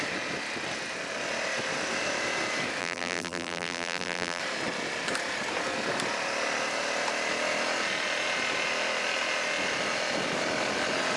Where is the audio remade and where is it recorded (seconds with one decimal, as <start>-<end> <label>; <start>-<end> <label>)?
0.0-2.8 recorded; 2.8-4.4 remade; 4.4-11.2 recorded